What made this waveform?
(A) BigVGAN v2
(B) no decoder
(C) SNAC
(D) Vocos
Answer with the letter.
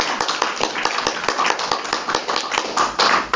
B